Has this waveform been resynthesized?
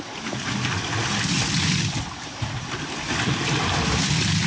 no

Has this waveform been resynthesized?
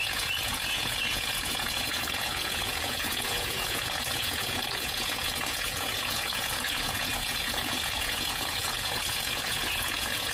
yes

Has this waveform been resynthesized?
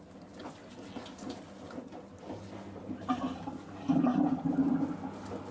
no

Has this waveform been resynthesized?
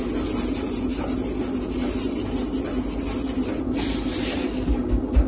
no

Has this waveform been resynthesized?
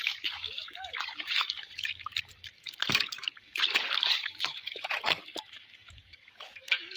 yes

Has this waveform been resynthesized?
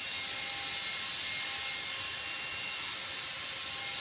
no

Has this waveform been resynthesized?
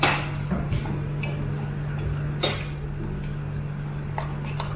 no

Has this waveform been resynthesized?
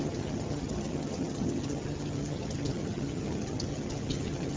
yes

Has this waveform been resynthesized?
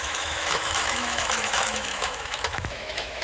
yes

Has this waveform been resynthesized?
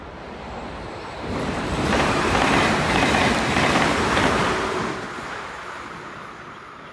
yes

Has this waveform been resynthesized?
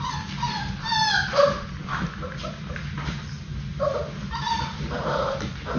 no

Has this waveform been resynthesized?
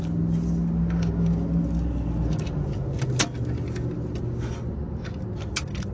no